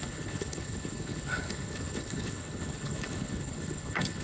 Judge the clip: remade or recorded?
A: remade